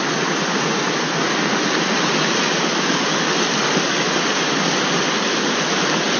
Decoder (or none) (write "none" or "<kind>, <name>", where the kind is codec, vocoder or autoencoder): none